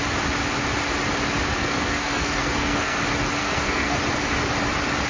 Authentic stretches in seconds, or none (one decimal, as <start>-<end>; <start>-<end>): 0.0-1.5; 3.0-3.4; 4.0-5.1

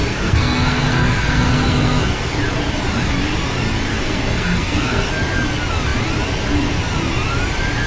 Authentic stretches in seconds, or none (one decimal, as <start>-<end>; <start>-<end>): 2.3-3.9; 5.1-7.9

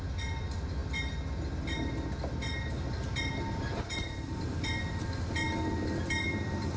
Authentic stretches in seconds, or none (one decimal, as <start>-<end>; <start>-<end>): 0.0-6.8

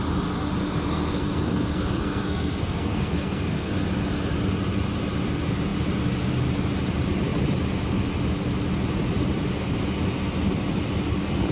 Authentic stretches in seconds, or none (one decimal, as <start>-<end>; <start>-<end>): 0.0-0.6; 3.7-11.5

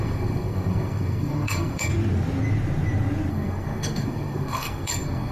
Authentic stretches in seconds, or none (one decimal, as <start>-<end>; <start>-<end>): 1.9-3.3